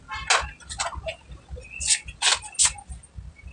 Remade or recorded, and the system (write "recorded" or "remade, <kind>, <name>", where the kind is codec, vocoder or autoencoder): recorded